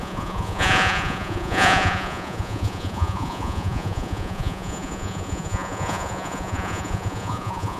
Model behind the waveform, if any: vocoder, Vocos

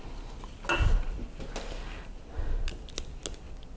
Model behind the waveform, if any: none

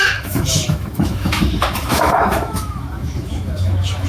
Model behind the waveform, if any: autoencoder, DAC-VAE